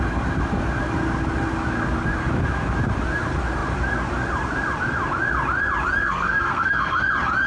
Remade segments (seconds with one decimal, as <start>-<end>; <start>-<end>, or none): 6.0-7.1